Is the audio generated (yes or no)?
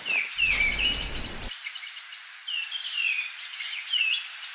no